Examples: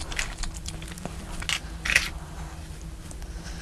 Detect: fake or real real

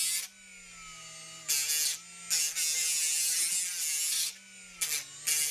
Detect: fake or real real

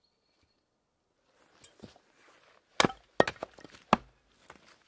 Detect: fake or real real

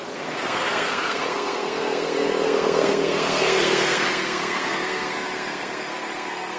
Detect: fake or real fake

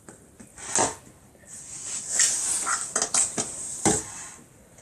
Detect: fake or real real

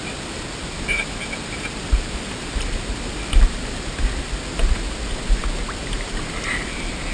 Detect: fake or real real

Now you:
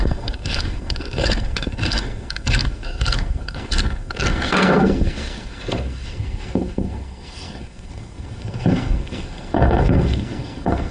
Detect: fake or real fake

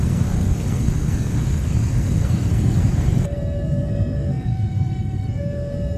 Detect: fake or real fake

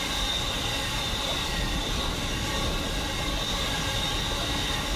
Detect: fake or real real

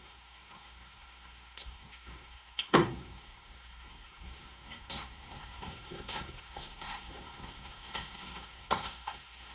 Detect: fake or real fake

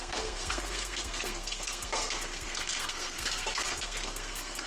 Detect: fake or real fake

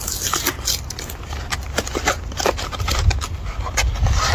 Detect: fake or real real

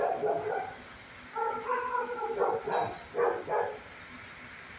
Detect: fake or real real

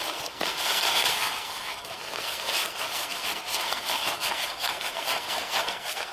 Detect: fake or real fake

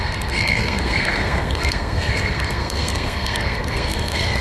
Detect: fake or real fake